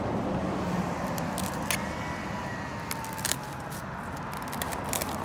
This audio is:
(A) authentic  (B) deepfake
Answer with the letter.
A